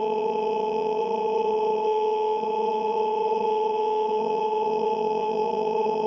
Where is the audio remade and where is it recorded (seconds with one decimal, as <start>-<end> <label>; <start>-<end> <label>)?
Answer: 0.0-6.1 remade